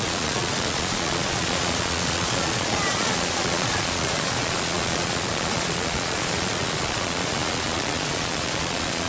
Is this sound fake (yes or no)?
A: yes